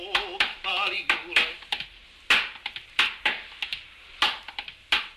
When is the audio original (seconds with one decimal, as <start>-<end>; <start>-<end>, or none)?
0.0-3.7; 4.2-5.2